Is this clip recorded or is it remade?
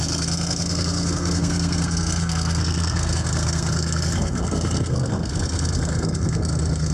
remade